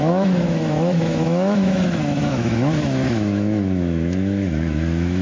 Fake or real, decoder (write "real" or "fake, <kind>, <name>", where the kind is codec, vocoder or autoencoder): fake, autoencoder, DAC-VAE